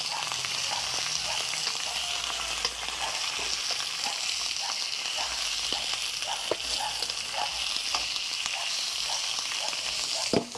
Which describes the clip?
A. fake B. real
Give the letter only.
B